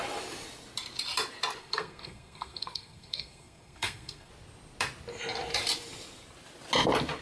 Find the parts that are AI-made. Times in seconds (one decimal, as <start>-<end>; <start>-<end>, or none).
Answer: 1.6-4.3